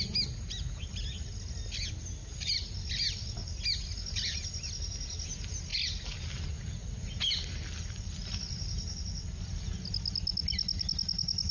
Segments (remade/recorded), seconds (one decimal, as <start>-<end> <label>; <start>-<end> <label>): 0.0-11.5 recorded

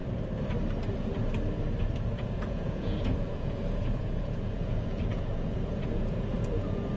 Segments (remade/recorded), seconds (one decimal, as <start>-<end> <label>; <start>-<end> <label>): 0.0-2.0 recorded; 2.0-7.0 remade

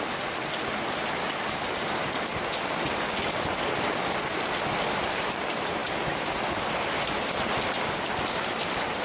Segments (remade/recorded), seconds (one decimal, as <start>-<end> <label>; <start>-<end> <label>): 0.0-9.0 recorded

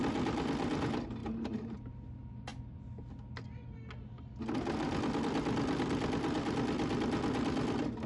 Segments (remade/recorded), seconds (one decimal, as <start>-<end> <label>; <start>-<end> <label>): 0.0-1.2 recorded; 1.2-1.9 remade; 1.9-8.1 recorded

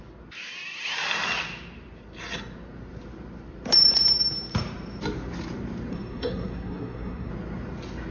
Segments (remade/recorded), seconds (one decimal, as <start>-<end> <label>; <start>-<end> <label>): 0.0-5.9 recorded; 5.9-7.3 remade; 7.3-8.1 recorded

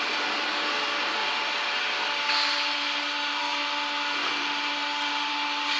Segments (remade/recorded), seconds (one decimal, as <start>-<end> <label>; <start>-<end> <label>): 0.0-5.8 recorded

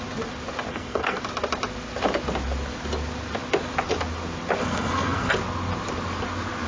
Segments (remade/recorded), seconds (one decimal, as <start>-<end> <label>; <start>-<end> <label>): 0.0-0.7 recorded; 0.7-1.2 remade; 1.2-4.6 recorded; 4.6-5.3 remade; 5.3-6.7 recorded